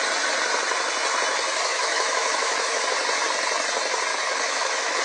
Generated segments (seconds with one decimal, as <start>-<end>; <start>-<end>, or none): 1.7-2.8; 4.1-5.0

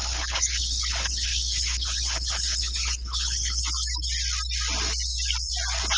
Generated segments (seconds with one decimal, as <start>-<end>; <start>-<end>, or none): 0.0-3.6

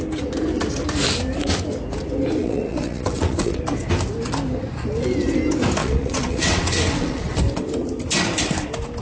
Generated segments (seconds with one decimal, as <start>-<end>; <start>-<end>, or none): 2.4-3.6; 5.8-7.4

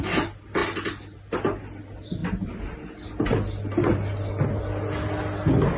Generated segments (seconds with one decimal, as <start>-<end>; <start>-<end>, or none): none

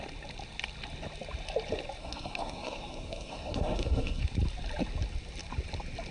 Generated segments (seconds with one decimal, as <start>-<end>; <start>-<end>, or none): 2.0-4.2

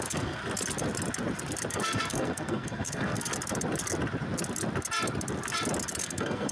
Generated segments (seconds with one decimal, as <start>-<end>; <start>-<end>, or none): 0.0-0.4; 1.7-3.3; 6.0-6.5

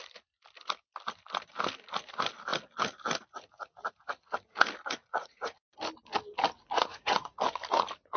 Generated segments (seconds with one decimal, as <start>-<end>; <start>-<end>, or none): 5.0-5.7; 6.9-7.4